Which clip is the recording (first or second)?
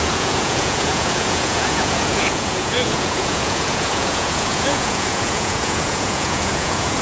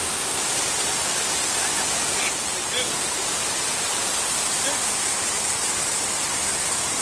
second